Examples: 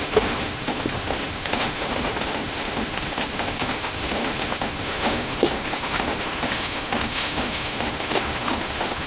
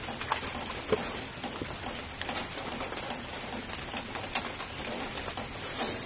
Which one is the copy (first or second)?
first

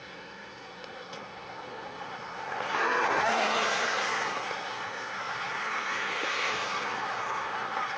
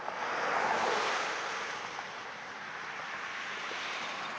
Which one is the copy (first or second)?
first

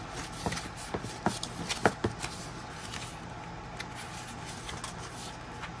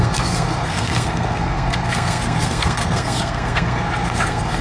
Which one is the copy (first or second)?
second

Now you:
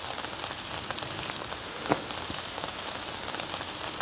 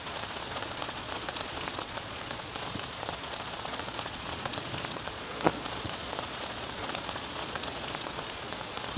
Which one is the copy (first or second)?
second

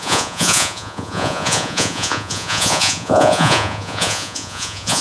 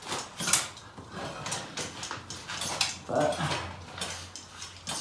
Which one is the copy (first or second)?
first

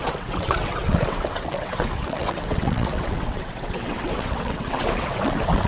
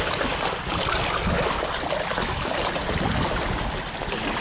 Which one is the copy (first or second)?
first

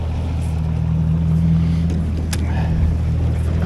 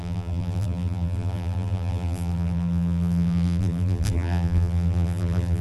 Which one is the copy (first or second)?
second